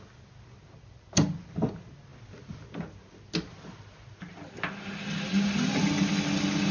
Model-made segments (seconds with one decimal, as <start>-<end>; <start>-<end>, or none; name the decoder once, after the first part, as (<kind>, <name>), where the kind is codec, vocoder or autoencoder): none